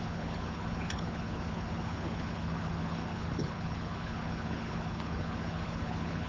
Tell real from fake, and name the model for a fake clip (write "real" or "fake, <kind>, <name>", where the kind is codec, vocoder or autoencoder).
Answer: fake, codec, HILCodec